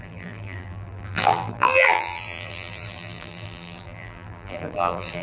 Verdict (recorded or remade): remade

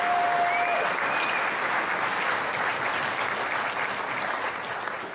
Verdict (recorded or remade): recorded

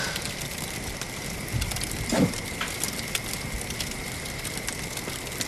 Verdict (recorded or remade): recorded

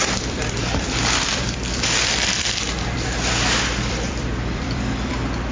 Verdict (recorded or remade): remade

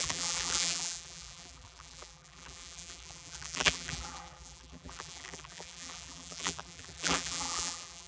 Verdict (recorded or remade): remade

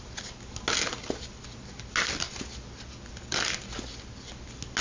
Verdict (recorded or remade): recorded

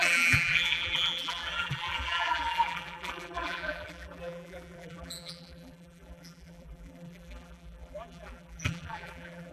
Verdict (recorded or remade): remade